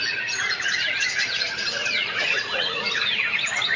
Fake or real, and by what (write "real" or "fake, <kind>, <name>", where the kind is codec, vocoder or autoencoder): fake, vocoder, Vocos